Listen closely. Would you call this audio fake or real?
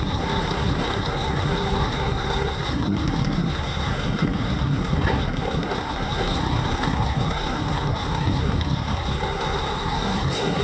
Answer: fake